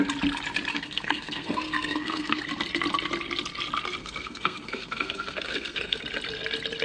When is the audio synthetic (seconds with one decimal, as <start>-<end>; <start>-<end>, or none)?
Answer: 0.7-2.4; 4.0-6.0